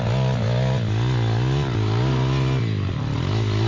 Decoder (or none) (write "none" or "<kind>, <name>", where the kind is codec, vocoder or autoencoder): none